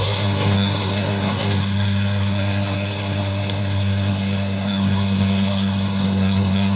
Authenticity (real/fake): fake